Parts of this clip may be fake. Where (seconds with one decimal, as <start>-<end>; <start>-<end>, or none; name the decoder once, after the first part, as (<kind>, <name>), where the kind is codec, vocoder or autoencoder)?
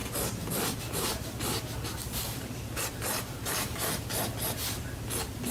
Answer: 0.0-0.8 (vocoder, BigVGAN v2); 2.0-3.9